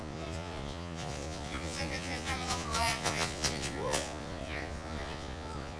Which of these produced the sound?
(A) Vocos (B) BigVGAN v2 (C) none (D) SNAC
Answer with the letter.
A